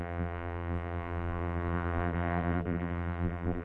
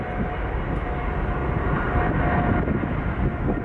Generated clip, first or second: first